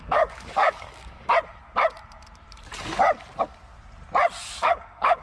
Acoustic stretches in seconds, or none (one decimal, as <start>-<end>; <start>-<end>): 1.3-4.4